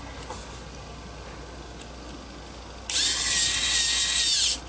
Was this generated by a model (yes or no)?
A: no